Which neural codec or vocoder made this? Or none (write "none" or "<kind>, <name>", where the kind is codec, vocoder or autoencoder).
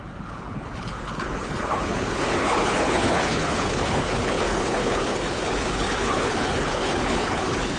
codec, HILCodec